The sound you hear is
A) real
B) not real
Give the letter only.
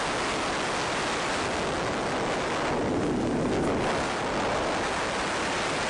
A